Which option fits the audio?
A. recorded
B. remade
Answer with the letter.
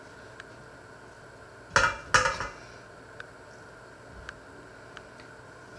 A